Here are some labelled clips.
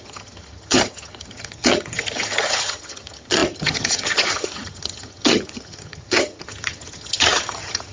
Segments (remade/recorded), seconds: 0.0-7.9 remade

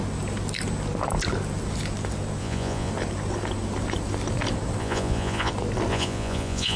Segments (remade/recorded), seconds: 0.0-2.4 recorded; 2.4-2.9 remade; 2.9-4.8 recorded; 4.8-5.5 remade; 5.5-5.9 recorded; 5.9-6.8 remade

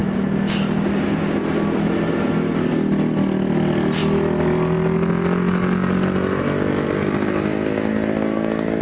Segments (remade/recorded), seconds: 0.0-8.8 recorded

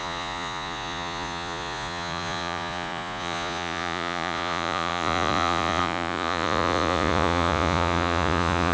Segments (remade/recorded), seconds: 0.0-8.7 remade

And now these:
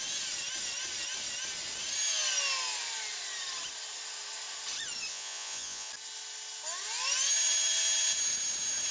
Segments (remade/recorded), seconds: 0.0-5.1 recorded; 5.1-5.9 remade; 5.9-8.9 recorded

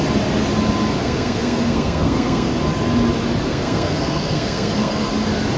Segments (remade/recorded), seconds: 0.0-1.0 recorded; 1.0-2.5 remade; 2.5-3.5 recorded; 3.5-5.1 remade; 5.1-5.6 recorded